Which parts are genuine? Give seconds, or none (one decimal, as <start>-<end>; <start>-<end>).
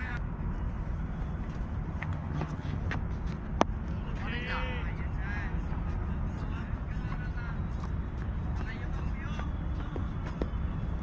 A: 0.0-2.0; 2.8-11.0